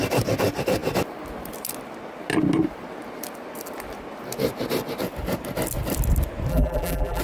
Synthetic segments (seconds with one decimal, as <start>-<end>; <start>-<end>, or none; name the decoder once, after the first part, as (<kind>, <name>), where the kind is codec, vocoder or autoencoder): 6.5-7.2 (vocoder, BigVGAN v2)